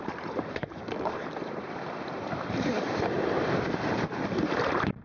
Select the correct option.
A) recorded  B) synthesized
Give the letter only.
B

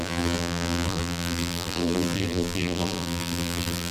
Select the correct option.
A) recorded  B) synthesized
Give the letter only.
B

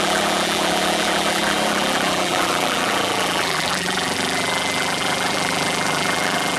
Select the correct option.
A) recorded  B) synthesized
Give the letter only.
B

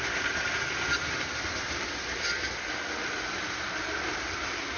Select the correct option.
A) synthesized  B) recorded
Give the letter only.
B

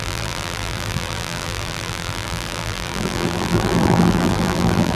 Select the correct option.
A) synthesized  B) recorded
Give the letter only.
A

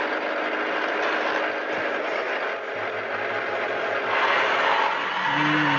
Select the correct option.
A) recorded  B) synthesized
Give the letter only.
A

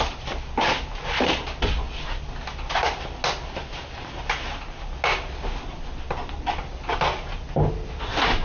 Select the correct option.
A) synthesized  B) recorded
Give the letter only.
B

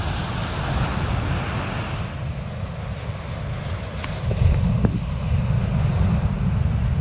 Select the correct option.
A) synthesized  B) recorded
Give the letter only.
B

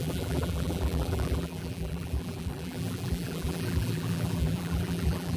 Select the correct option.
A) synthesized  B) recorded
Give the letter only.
A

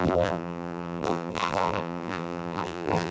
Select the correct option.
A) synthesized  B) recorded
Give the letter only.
A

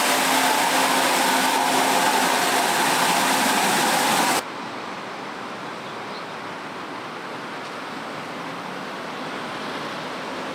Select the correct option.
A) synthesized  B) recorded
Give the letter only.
B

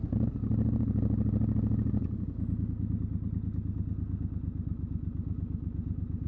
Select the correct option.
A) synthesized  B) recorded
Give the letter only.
B